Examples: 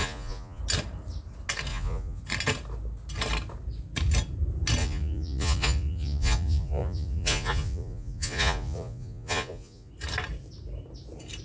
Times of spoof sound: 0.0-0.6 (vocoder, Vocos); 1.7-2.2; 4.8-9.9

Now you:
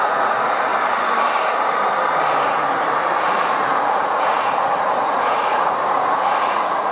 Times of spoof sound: 0.0-0.7 (vocoder, Vocos); 3.2-6.9